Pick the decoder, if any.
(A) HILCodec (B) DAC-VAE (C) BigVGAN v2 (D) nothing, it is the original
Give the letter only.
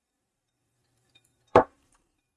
C